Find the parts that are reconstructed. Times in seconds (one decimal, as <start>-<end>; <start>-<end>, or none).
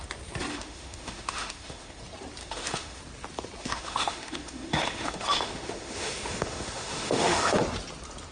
0.5-2.0; 2.4-3.0; 3.6-7.6